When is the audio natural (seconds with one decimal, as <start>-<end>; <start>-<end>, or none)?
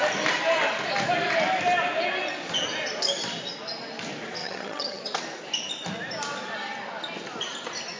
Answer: 0.0-4.4; 5.0-8.0